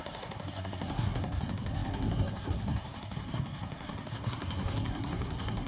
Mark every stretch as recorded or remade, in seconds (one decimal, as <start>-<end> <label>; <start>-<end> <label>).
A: 0.0-5.7 remade